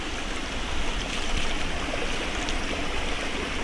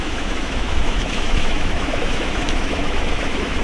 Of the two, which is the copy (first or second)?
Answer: second